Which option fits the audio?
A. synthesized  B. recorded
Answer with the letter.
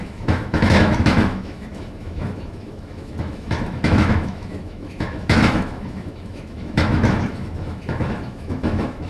A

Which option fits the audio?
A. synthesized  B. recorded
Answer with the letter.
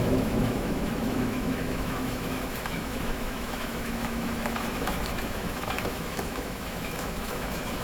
A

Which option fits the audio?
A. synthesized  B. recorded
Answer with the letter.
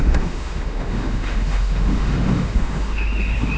A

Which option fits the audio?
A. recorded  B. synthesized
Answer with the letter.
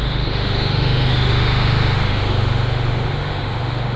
B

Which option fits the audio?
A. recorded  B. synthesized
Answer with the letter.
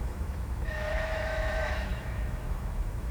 B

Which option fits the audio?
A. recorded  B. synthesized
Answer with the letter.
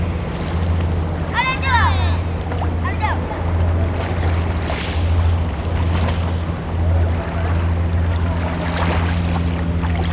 A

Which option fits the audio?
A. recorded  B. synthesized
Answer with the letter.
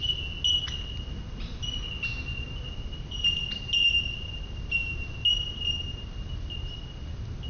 A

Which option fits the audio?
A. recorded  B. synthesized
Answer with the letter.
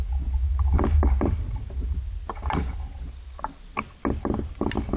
A